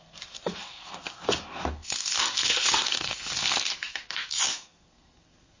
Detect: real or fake fake